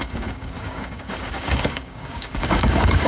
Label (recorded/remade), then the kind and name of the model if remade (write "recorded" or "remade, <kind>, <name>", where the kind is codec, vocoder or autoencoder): remade, codec, DAC